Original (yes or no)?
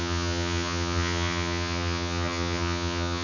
no